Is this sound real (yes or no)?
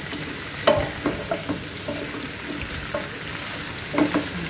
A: yes